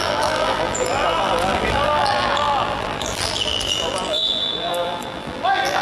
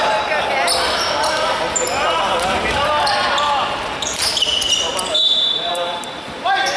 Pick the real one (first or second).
second